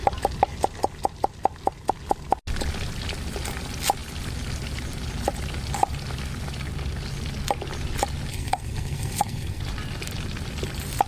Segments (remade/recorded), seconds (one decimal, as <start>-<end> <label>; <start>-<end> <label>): 0.0-8.3 recorded; 8.3-9.6 remade; 9.6-11.1 recorded

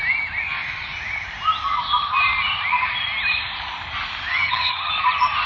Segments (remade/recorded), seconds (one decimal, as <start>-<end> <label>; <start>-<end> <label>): 0.0-4.3 recorded; 4.3-4.9 remade; 4.9-5.5 recorded